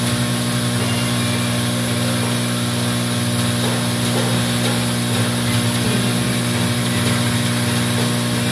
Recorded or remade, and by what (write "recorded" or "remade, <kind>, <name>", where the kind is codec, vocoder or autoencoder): recorded